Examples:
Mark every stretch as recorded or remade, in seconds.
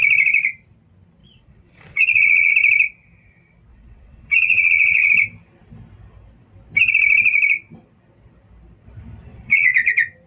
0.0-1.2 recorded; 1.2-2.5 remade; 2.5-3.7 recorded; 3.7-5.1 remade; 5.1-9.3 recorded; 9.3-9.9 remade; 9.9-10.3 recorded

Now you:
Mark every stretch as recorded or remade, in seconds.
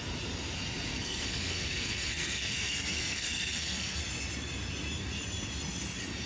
0.0-0.9 recorded; 0.9-4.0 remade; 4.0-6.3 recorded